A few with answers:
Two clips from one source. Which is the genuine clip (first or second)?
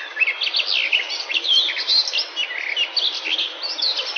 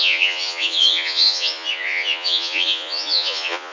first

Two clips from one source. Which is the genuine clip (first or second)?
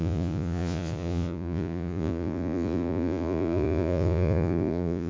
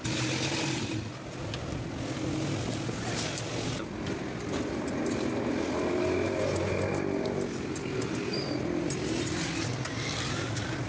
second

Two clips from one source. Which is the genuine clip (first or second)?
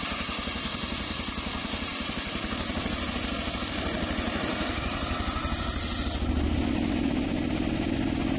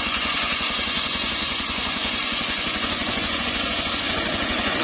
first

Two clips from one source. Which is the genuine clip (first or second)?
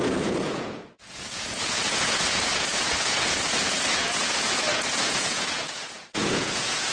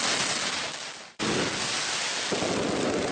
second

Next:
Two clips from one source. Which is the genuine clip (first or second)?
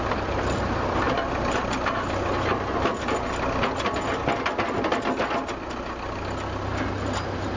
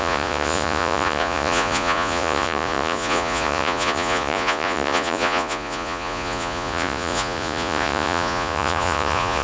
first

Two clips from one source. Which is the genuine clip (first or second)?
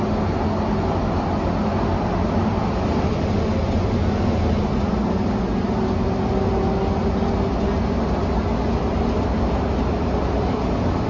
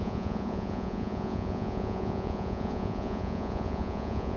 first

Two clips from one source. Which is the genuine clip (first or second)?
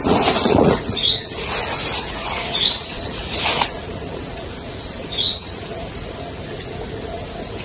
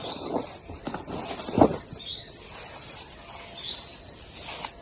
second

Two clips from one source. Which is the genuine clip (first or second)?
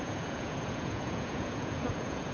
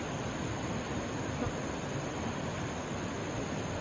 second